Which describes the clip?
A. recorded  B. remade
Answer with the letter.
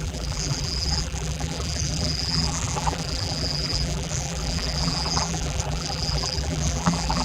B